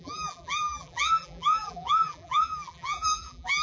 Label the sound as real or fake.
fake